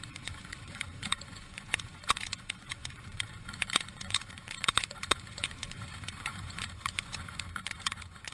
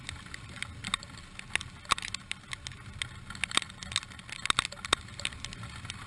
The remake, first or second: first